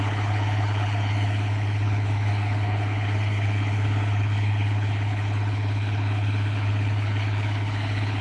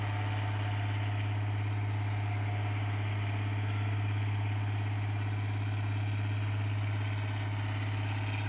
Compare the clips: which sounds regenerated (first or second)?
first